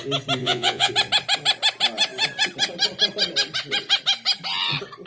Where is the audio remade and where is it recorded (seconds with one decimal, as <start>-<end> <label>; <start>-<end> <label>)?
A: 0.0-0.4 recorded; 0.4-0.9 remade; 0.9-5.1 recorded